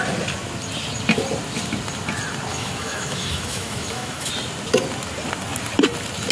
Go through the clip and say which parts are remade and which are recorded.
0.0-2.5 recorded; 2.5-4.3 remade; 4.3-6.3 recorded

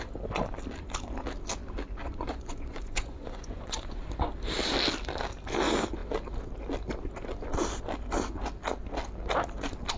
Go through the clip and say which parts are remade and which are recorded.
0.0-2.0 recorded; 2.0-4.0 remade; 4.0-10.0 recorded

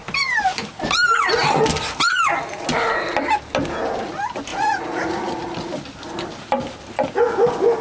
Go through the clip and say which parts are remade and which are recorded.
0.0-4.5 recorded; 4.5-5.2 remade; 5.2-7.8 recorded